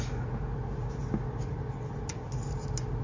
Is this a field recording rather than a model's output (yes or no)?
yes